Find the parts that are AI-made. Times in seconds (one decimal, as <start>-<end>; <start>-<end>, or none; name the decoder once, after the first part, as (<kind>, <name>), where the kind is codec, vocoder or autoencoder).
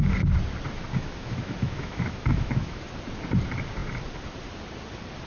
0.9-2.8 (autoencoder, DAC-VAE)